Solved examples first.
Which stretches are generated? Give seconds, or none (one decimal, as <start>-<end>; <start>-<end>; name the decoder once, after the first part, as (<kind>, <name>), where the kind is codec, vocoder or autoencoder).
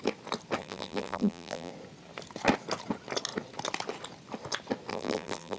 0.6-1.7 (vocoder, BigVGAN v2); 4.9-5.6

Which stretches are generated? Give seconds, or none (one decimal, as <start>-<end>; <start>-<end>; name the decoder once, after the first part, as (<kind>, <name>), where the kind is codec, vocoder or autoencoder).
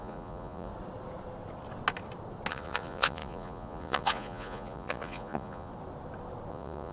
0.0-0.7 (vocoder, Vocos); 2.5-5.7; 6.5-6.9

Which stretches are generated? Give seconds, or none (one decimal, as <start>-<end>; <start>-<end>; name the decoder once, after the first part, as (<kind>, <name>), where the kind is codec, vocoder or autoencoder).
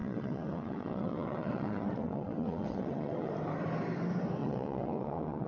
0.0-3.3 (vocoder, WaveNeXt); 4.4-5.5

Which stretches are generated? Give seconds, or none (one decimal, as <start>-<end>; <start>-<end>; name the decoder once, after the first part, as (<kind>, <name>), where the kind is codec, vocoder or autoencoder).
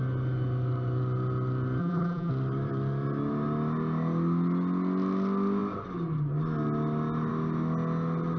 1.8-2.3 (vocoder, BigVGAN v2)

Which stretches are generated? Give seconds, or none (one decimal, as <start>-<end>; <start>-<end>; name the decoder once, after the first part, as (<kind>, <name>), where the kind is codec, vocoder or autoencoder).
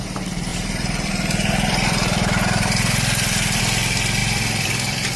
0.5-3.6 (vocoder, BigVGAN v2); 4.2-5.2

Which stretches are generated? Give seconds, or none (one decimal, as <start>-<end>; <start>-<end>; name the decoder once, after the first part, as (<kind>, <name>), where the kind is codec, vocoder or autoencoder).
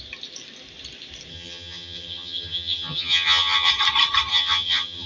1.3-3.7 (vocoder, HiFi-GAN); 4.3-5.1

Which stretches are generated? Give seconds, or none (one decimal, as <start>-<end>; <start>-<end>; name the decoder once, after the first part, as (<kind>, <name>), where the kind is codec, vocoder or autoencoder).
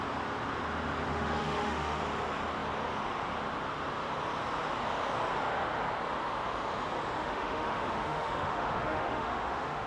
1.1-2.0 (autoencoder, DAC-VAE); 7.2-9.9